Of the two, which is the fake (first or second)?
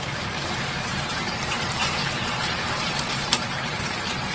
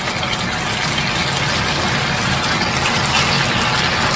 first